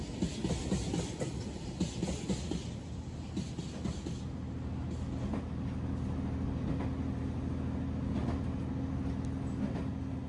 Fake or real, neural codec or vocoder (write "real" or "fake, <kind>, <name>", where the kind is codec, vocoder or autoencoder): real